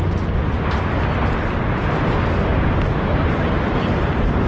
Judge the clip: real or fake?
real